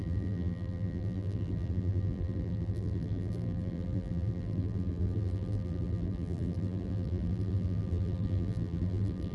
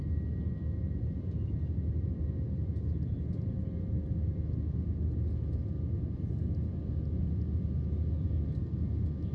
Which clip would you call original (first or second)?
second